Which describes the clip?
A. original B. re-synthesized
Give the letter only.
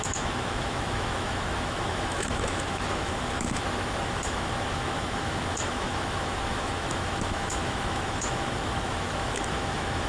B